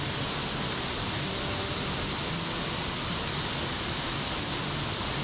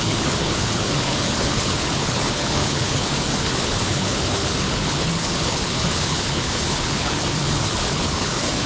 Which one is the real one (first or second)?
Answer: first